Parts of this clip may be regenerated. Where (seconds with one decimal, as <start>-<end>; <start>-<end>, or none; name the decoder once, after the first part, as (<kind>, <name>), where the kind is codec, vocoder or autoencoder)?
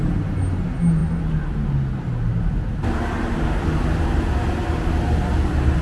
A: none